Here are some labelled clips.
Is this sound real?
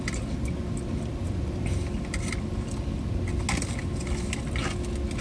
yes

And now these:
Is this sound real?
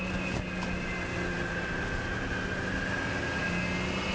yes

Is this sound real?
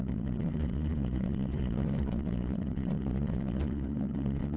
no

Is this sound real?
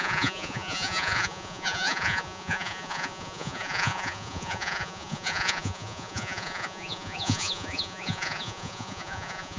no